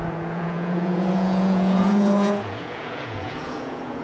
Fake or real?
fake